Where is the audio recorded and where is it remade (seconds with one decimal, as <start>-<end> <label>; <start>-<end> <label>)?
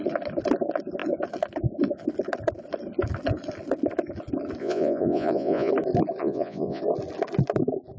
0.0-4.6 recorded; 4.6-5.7 remade; 5.7-6.2 recorded; 6.2-6.8 remade; 6.8-8.0 recorded